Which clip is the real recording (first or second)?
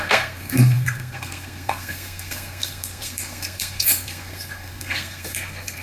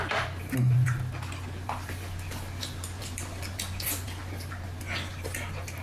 second